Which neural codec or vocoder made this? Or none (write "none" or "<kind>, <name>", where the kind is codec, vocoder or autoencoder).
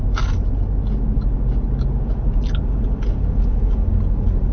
none